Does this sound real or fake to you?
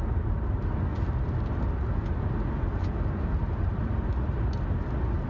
real